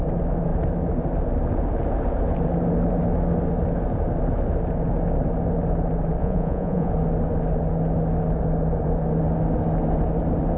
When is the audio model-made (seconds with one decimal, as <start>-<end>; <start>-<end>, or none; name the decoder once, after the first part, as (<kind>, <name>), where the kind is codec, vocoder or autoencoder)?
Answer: 6.2-6.9 (vocoder, Vocos)